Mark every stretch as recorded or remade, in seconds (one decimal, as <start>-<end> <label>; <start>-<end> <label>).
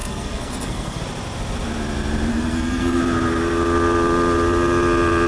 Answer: 0.0-1.0 remade; 1.0-2.3 recorded; 2.3-3.0 remade; 3.0-5.3 recorded